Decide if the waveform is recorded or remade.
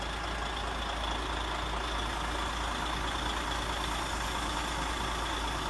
recorded